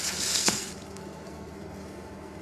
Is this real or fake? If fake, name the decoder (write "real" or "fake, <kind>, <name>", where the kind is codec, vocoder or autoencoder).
fake, codec, SNAC